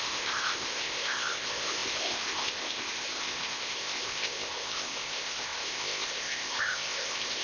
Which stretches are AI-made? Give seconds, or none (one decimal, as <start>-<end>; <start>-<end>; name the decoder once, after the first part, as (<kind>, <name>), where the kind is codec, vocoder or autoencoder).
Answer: 0.0-7.4 (codec, ZipCodec)